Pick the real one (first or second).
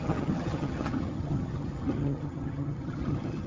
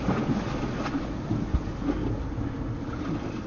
second